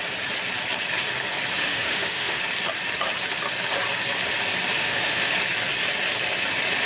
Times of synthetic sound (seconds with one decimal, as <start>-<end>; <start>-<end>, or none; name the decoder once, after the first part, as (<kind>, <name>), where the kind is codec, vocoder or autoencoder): 1.6-2.4 (autoencoder, DAC-VAE); 4.8-5.3